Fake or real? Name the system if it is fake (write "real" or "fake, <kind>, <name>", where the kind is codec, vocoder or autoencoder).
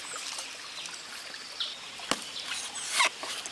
real